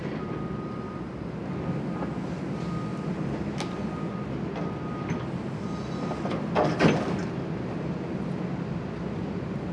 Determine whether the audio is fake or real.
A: real